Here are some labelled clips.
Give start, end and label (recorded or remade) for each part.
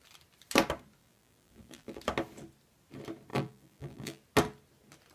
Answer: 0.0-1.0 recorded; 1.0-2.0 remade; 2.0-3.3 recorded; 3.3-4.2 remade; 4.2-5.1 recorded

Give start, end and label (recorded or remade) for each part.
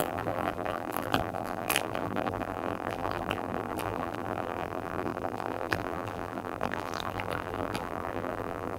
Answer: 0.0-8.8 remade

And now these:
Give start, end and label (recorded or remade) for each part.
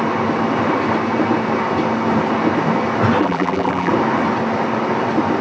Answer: 0.0-3.2 recorded; 3.2-3.9 remade; 3.9-5.4 recorded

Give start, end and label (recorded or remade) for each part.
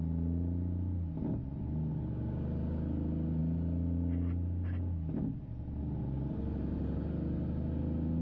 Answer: 0.0-8.2 recorded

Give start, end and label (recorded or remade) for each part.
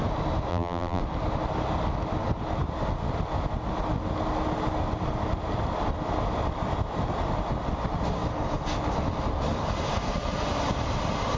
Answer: 0.0-0.5 recorded; 0.5-1.0 remade; 1.0-11.4 recorded